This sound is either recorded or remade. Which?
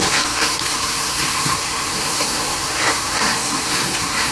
remade